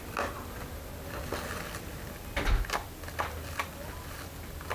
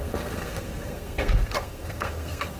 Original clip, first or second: first